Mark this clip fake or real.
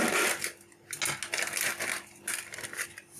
real